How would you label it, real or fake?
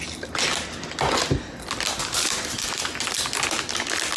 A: real